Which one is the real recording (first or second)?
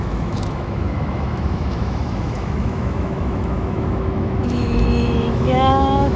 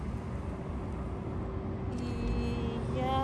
second